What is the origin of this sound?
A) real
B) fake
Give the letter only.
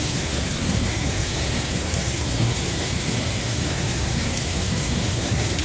B